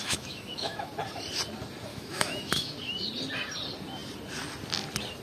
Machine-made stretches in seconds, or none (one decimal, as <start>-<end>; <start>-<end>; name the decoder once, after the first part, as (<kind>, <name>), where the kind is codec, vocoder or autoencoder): 0.0-0.9 (autoencoder, DAC-VAE); 1.9-2.7

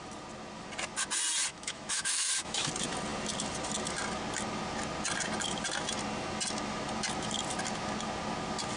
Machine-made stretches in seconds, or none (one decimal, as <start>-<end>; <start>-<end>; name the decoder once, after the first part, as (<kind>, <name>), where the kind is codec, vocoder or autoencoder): 1.5-2.7 (autoencoder, DAC-VAE)

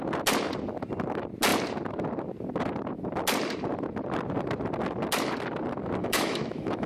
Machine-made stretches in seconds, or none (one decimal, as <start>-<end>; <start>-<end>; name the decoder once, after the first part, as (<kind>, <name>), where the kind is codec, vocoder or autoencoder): 6.0-6.9 (autoencoder, DAC-VAE)

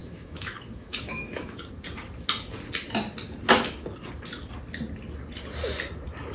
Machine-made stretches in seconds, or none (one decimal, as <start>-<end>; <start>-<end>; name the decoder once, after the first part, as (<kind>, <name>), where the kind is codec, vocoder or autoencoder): 0.0-1.6 (autoencoder, DAC-VAE)

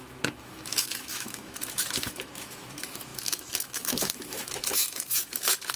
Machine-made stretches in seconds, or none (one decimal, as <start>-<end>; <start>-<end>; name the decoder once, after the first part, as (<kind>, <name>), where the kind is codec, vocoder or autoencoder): 0.0-5.8 (autoencoder, DAC-VAE)

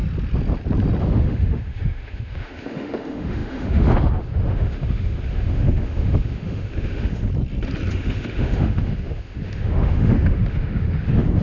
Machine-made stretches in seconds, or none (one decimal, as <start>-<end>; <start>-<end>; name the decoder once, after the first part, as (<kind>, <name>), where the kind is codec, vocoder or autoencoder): 1.0-7.3 (autoencoder, DAC-VAE); 7.9-11.4